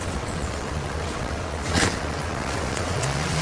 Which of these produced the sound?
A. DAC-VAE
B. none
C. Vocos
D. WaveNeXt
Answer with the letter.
D